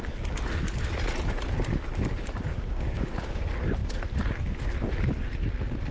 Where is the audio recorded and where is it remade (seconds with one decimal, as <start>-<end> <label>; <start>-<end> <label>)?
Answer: 0.0-2.5 recorded; 2.5-3.4 remade; 3.4-5.9 recorded